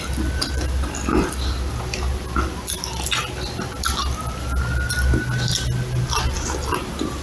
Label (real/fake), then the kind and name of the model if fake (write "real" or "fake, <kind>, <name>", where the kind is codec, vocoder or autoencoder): real